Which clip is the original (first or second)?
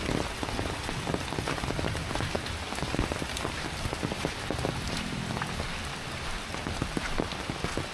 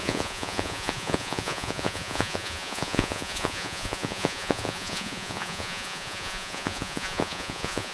first